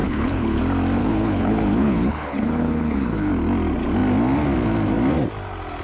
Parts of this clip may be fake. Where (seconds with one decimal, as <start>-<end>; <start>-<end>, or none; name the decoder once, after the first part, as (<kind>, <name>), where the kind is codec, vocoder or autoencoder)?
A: 0.0-0.6 (codec, HILCodec); 1.0-3.3